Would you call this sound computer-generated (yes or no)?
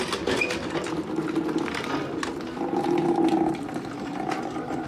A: no